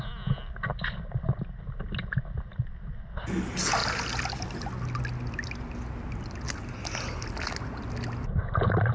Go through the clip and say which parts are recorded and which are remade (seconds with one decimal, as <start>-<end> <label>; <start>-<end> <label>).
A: 0.0-8.9 recorded

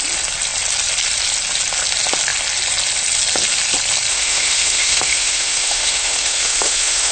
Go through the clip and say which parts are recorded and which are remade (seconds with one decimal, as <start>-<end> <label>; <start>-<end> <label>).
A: 0.0-4.1 recorded; 4.1-7.1 remade